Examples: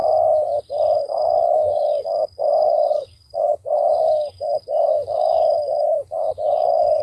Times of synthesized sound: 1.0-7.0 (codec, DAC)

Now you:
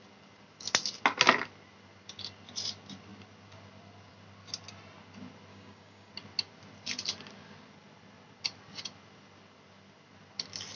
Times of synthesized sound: 5.5-6.1 (codec, DAC)